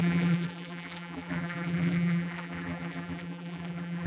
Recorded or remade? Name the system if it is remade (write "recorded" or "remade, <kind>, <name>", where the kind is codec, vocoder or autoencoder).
remade, vocoder, BigVGAN v2